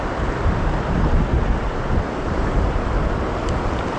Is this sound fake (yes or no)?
no